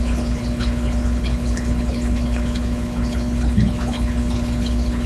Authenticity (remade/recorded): remade